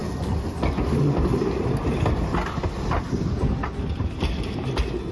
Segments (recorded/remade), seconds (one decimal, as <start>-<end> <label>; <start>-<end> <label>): 0.0-5.1 recorded